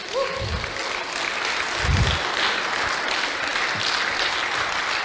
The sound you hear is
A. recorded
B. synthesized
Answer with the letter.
A